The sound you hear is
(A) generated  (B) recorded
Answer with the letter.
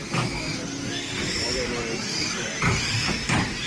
B